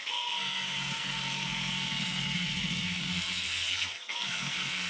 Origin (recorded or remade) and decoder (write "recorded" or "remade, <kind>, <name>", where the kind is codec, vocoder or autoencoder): remade, codec, SNAC